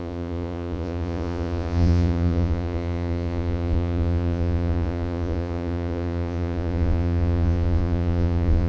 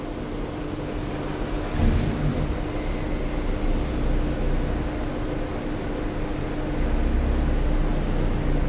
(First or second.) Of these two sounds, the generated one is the first